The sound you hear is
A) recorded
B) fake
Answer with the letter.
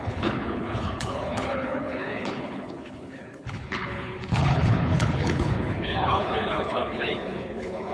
B